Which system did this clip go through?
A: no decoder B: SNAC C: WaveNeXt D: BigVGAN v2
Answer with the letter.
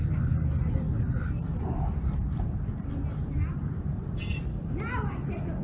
A